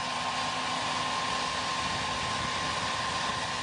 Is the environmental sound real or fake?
real